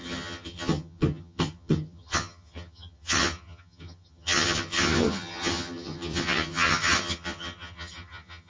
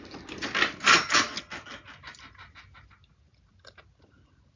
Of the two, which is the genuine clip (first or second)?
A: second